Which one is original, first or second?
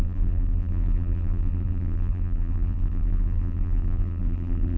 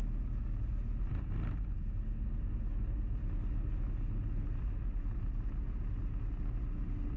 second